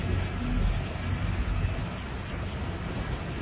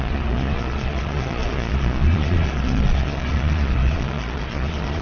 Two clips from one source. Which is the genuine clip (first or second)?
first